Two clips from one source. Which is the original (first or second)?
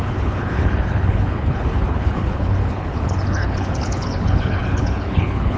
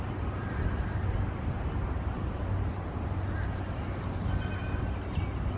second